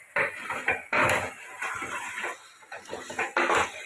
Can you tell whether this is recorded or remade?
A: recorded